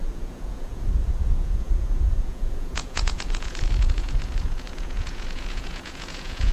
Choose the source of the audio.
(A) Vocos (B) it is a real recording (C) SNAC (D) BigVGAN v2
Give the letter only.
A